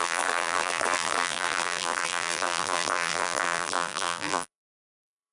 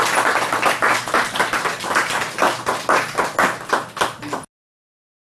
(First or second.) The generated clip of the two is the first